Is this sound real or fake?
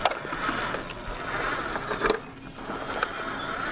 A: real